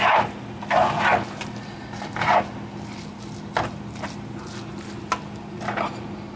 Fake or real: real